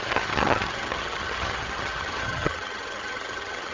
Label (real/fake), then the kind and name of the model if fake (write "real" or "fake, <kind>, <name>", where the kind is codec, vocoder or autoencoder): fake, vocoder, HiFi-GAN